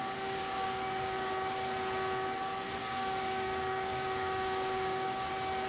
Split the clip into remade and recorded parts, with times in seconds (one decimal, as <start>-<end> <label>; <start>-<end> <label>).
0.0-0.4 recorded; 0.4-1.3 remade; 1.3-2.8 recorded; 2.8-5.3 remade; 5.3-5.7 recorded